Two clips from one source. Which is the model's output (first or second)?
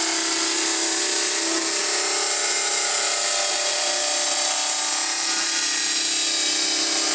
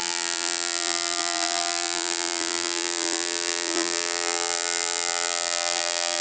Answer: second